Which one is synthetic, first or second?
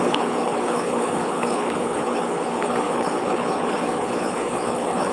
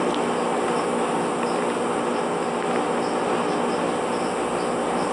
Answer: first